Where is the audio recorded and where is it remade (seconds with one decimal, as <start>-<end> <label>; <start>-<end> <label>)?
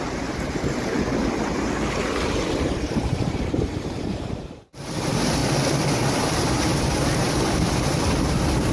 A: 0.0-5.4 remade; 5.4-6.1 recorded; 6.1-8.7 remade